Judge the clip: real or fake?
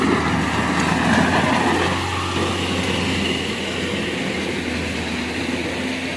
real